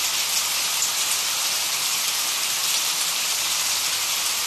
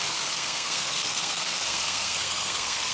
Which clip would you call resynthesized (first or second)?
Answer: second